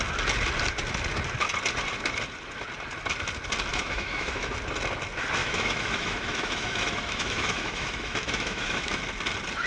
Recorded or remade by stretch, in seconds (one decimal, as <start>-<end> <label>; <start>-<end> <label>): 0.0-3.7 recorded; 3.7-4.5 remade; 4.5-5.4 recorded; 5.4-9.0 remade; 9.0-9.7 recorded